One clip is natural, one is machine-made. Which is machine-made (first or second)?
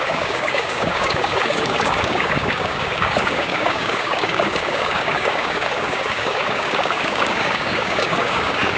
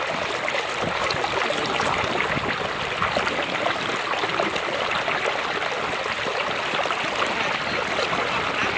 first